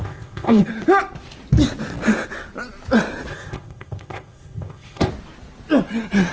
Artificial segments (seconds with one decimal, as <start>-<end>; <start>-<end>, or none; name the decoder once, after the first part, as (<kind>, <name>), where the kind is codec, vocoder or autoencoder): 0.0-0.7 (codec, ZipCodec); 3.3-5.1